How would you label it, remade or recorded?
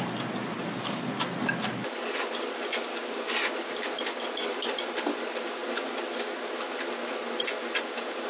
recorded